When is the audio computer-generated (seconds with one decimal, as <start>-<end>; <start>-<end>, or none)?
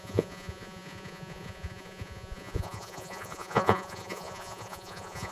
0.0-5.3